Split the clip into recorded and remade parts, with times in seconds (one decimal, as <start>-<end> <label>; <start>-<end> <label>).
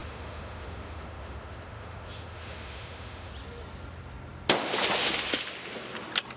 0.0-3.3 remade; 3.3-6.4 recorded